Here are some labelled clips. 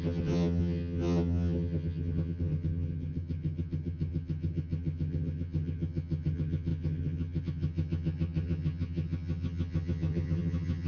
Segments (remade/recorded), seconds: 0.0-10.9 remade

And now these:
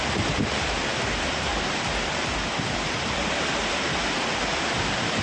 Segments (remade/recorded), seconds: 0.0-5.2 recorded

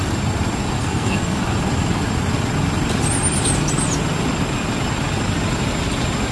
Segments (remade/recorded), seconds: 0.0-0.8 recorded; 0.8-1.4 remade; 1.4-6.3 recorded

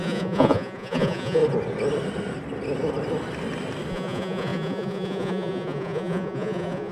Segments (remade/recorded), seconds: 0.0-1.4 remade; 1.4-3.9 recorded; 3.9-6.9 remade

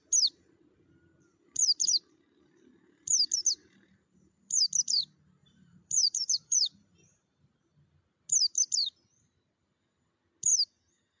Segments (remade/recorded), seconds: 0.0-3.6 recorded; 3.6-4.6 remade; 4.6-5.4 recorded; 5.4-7.5 remade; 7.5-11.2 recorded

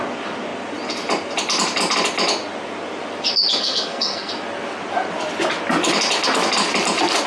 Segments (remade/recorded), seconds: 0.0-3.5 recorded; 3.5-4.3 remade; 4.3-7.3 recorded

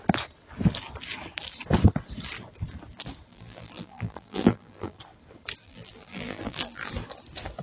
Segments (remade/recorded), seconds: 0.0-3.3 recorded; 3.3-5.0 remade; 5.0-5.6 recorded; 5.6-6.9 remade; 6.9-7.6 recorded